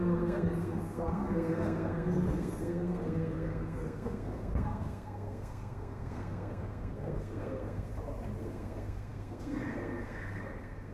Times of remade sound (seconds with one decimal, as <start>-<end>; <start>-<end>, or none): 0.0-7.9; 8.4-10.9